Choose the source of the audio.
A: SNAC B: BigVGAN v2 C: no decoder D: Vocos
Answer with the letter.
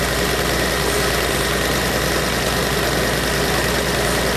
C